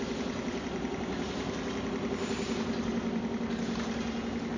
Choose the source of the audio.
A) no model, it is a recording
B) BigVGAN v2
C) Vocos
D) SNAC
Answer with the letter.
A